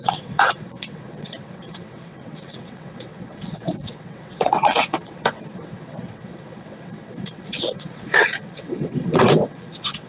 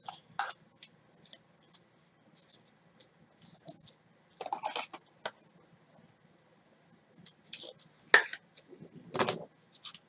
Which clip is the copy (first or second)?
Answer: first